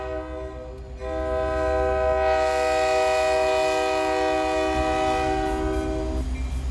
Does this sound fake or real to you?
real